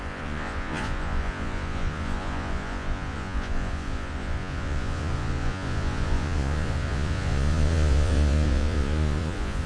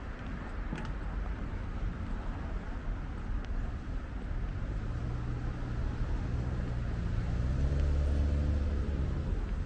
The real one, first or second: second